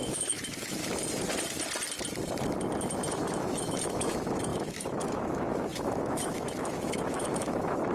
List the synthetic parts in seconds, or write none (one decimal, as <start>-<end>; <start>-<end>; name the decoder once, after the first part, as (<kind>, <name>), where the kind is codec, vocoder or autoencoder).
0.0-0.8 (autoencoder, DAC-VAE); 3.1-7.9

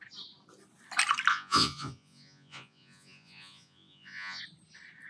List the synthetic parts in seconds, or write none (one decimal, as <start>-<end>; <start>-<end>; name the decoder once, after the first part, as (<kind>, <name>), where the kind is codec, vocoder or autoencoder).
1.3-4.4 (vocoder, Vocos)

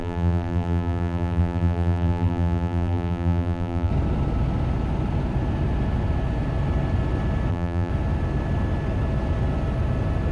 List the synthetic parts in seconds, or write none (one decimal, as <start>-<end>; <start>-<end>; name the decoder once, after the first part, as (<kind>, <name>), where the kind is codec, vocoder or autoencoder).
0.0-3.9 (vocoder, BigVGAN v2); 7.5-7.9

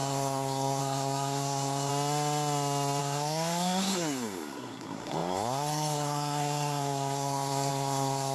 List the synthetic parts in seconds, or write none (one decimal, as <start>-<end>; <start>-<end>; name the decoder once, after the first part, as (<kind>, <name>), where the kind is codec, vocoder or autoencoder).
0.0-1.9 (codec, SNAC); 3.0-8.3

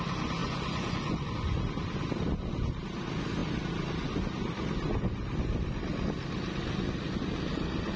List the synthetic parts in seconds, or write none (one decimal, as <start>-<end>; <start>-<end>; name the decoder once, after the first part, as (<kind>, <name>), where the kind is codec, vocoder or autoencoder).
0.4-1.6 (vocoder, Vocos)

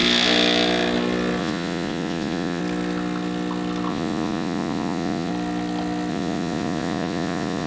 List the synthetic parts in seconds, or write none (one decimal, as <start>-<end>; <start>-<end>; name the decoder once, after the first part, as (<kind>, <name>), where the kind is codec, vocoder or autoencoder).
1.4-2.6 (vocoder, Vocos); 3.9-5.3; 6.1-7.7

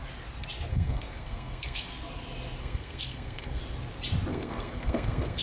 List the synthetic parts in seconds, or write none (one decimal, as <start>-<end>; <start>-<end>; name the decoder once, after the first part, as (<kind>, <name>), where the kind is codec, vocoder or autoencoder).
0.7-1.9 (codec, SNAC); 2.6-3.6; 4.3-5.4